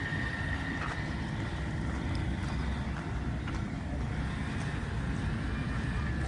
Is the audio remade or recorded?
recorded